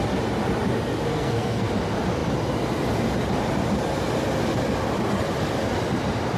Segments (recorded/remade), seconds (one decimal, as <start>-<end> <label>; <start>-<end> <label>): 0.0-1.1 recorded; 1.1-1.7 remade; 1.7-6.4 recorded